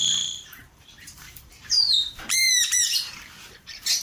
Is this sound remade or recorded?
remade